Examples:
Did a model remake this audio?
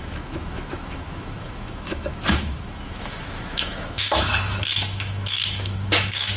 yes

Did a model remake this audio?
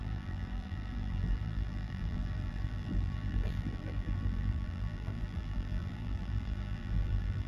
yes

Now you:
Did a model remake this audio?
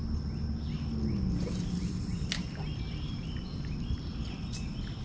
no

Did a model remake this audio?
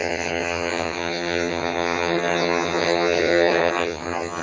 yes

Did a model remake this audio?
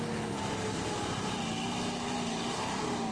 no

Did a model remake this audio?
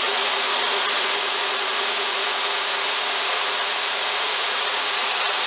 yes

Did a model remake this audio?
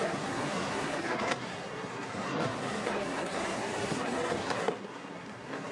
yes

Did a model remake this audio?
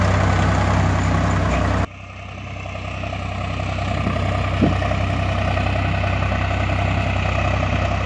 no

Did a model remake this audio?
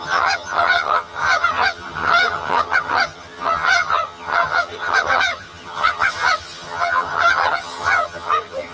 yes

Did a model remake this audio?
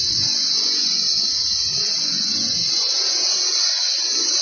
yes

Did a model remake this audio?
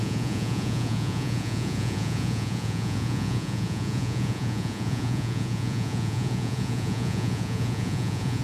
yes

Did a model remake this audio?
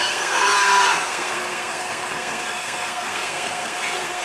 yes